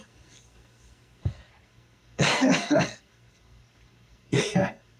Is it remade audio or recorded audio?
remade